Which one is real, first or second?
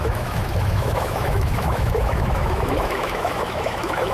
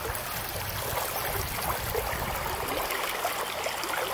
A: second